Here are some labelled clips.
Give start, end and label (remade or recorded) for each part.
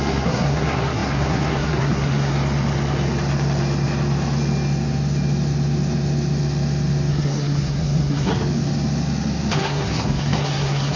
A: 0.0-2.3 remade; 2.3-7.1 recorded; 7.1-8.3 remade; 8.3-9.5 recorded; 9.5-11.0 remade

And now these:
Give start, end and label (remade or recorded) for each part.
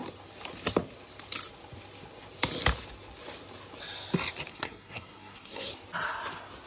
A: 0.0-4.5 recorded; 4.5-5.7 remade; 5.7-6.7 recorded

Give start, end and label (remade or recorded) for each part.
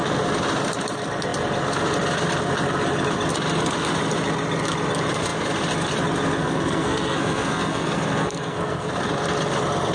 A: 0.0-6.4 recorded; 6.4-8.9 remade; 8.9-9.9 recorded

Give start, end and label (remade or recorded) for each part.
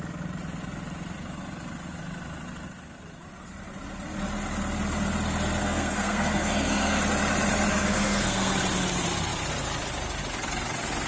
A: 0.0-5.6 recorded; 5.6-7.0 remade; 7.0-7.7 recorded; 7.7-8.5 remade; 8.5-11.1 recorded